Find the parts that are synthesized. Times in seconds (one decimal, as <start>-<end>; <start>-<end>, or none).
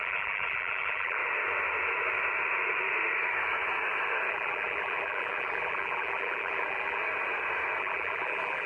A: 0.0-1.2; 4.3-7.0; 7.8-8.7